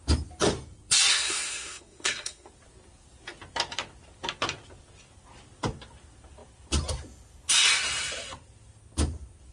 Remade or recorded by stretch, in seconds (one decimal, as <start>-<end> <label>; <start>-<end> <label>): 0.0-1.1 recorded; 1.1-2.5 remade; 2.5-9.5 recorded